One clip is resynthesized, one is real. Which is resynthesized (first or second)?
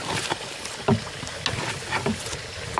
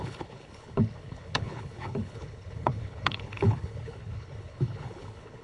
second